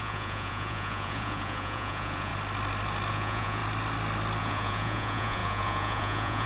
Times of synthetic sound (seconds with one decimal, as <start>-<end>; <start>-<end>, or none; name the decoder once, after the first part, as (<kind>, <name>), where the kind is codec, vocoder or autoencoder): 0.0-2.3 (vocoder, Vocos); 3.1-3.6; 4.4-6.5